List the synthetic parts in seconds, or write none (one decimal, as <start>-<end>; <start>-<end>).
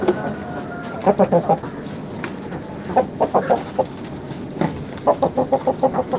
none